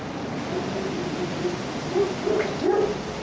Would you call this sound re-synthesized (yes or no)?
no